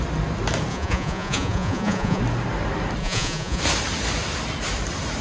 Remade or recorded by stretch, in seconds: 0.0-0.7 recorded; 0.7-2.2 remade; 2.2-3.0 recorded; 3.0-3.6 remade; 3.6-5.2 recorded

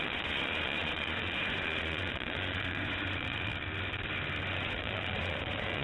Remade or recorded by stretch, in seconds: 0.0-3.5 remade; 3.5-4.5 recorded; 4.5-5.8 remade

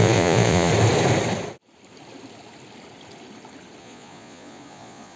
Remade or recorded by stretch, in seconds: 0.0-0.7 remade; 0.7-3.8 recorded; 3.8-5.2 remade